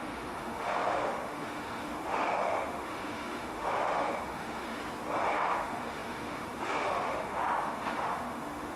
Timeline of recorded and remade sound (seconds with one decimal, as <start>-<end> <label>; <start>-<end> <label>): 0.0-4.8 remade; 4.8-5.3 recorded; 5.3-8.8 remade